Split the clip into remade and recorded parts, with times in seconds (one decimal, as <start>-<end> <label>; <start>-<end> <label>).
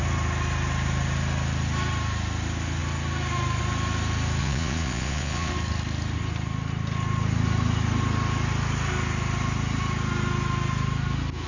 0.0-4.4 recorded; 4.4-5.5 remade; 5.5-11.5 recorded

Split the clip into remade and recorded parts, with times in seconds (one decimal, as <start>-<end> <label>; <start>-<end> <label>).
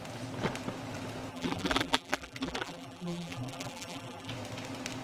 0.0-1.3 recorded; 1.3-4.3 remade; 4.3-5.0 recorded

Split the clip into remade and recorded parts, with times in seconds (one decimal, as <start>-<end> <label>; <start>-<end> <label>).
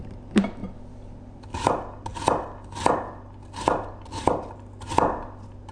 0.0-5.7 recorded